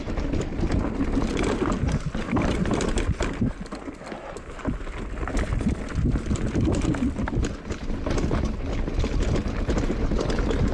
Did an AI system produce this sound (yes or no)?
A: no